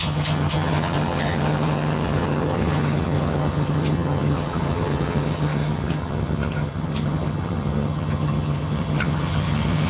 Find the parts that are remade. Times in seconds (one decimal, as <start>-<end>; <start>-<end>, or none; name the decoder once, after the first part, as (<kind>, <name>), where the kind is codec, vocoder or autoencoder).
0.0-9.9 (vocoder, HiFi-GAN)